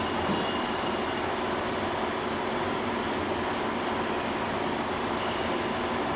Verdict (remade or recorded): recorded